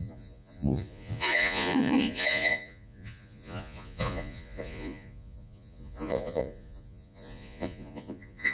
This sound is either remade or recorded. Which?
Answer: remade